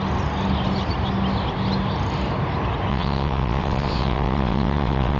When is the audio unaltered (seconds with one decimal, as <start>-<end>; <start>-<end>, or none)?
0.0-2.9